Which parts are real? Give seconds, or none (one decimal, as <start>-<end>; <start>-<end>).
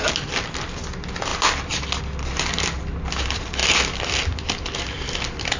0.0-5.6